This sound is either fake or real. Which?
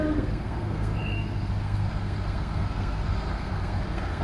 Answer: fake